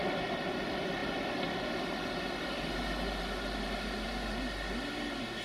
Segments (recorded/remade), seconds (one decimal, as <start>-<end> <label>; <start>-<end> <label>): 0.0-5.4 recorded